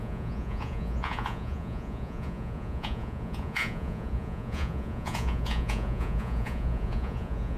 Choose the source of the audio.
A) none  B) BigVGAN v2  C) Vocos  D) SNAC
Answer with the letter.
C